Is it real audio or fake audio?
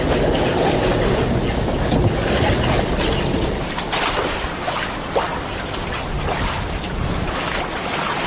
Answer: real